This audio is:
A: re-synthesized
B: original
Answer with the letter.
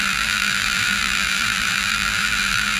A